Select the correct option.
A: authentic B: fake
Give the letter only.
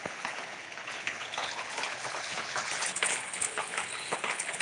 B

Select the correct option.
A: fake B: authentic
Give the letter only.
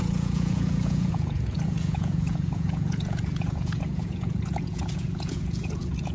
A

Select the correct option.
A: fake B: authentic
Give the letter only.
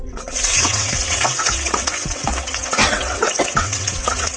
A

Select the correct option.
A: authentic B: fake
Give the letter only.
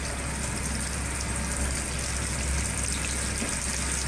A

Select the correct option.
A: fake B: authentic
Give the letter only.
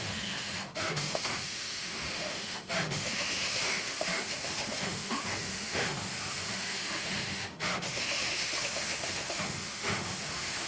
A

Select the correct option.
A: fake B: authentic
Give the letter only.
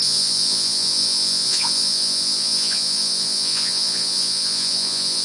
A